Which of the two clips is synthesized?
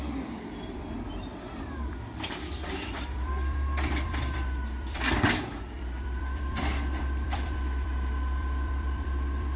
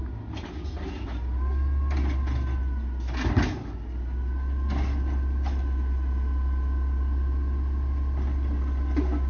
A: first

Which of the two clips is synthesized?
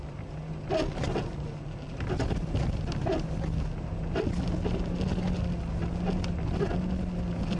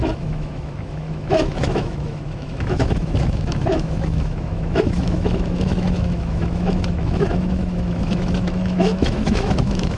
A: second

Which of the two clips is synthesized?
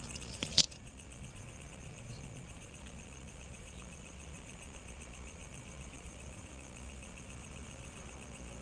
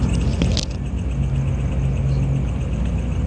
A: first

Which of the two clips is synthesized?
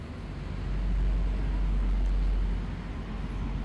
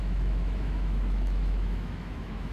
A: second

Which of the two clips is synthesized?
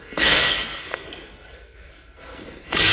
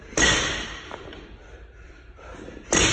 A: first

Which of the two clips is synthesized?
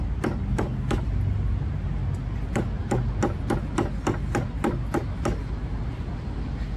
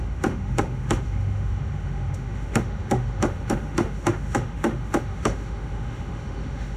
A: second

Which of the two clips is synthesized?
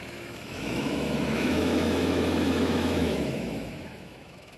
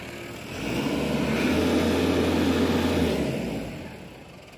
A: first